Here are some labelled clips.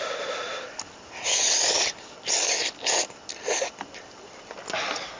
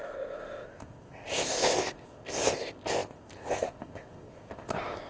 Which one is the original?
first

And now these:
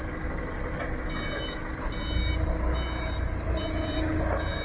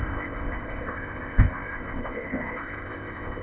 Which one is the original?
first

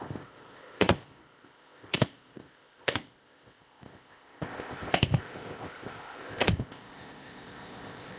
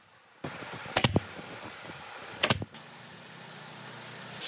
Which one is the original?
second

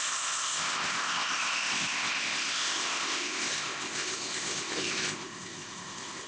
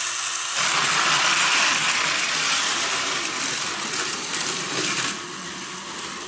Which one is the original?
second